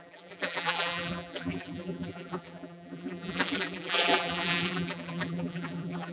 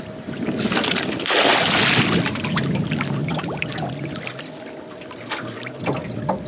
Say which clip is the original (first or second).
second